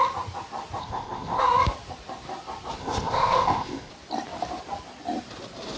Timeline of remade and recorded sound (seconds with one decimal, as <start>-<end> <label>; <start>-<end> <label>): 0.0-0.8 recorded; 0.8-1.4 remade; 1.4-2.8 recorded; 2.8-3.9 remade; 3.9-5.8 recorded